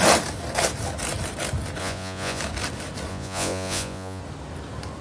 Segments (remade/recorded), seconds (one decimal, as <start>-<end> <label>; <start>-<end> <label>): 0.0-1.8 recorded; 1.8-2.4 remade; 2.4-3.1 recorded; 3.1-4.2 remade; 4.2-5.0 recorded